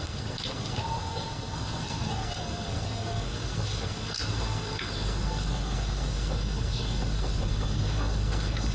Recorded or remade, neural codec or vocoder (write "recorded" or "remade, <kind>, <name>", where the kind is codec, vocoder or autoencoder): remade, codec, SNAC